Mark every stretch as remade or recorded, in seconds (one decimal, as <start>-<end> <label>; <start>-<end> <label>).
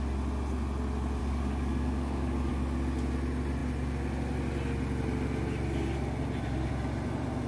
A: 0.0-1.2 recorded; 1.2-2.5 remade; 2.5-7.5 recorded